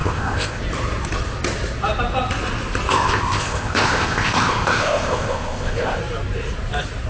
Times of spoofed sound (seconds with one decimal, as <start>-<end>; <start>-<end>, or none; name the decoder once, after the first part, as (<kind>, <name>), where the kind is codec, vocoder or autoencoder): 0.0-0.6 (codec, ZipCodec); 2.9-6.0